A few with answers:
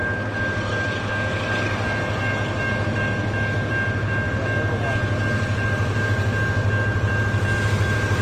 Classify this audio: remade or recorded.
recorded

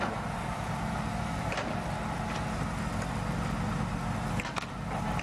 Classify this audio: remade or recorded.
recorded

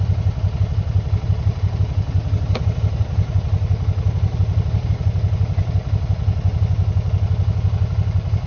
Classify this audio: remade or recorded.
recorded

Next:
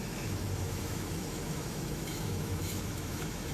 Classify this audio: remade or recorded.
remade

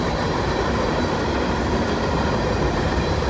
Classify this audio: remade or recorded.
recorded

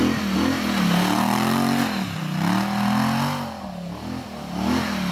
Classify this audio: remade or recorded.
recorded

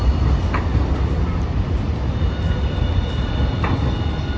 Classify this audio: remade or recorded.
recorded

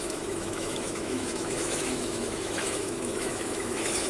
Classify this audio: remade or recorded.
remade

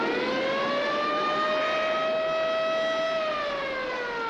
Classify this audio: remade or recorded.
recorded